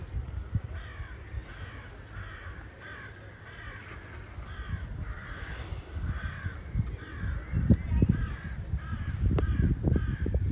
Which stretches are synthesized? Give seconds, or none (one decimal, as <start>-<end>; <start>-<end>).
1.4-3.6; 4.9-10.5

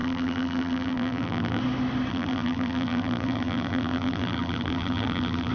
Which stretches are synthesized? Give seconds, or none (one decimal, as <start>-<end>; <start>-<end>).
0.0-1.6; 2.1-5.5

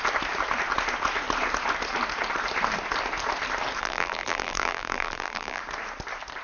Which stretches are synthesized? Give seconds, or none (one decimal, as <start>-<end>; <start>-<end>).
3.8-5.6

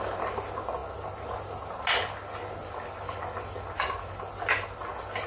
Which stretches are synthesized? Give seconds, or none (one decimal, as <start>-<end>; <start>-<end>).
none

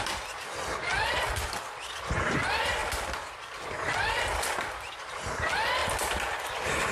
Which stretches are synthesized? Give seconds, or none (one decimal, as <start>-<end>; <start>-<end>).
5.8-6.9